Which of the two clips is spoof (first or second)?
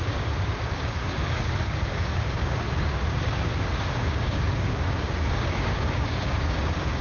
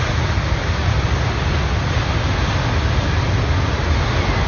first